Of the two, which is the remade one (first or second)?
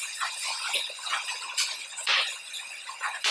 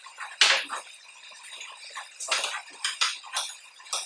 first